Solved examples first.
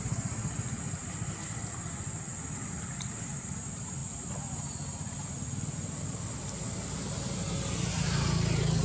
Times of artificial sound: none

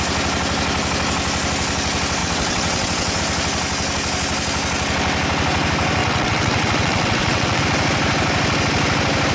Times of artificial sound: 2.2-3.2 (vocoder, WaveNeXt); 6.0-7.6

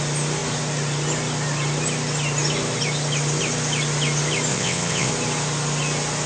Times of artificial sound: 4.5-5.1 (vocoder, WaveNeXt)

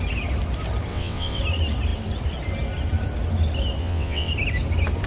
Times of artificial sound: 0.9-1.4 (vocoder, WaveNeXt); 3.8-4.3

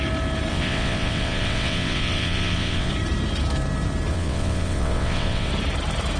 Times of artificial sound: 0.5-2.9 (vocoder, WaveNeXt); 4.1-5.5

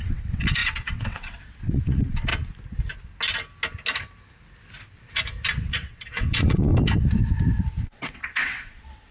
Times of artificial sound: 0.0-2.3 (vocoder, WaveNeXt); 5.6-6.7; 7.8-9.1

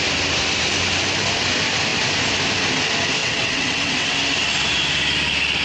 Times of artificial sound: 3.2-4.1 (vocoder, WaveNeXt)

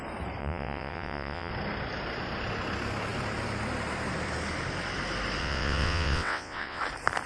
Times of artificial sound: 0.4-1.5 (vocoder, WaveNeXt); 5.4-6.8